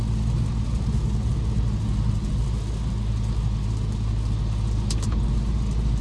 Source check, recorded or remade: recorded